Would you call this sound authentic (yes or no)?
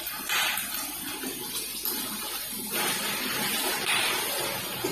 yes